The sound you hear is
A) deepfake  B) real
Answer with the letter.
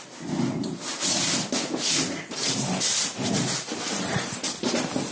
B